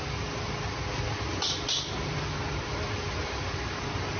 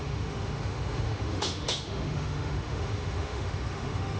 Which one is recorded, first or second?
first